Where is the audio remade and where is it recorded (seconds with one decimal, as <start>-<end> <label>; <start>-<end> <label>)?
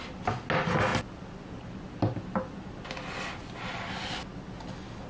0.0-5.1 recorded